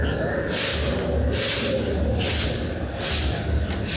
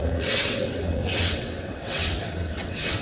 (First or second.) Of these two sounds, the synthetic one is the second